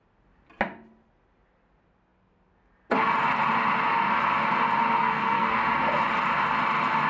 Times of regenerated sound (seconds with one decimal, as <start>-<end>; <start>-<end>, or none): 5.0-5.6